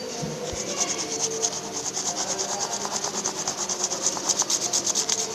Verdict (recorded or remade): recorded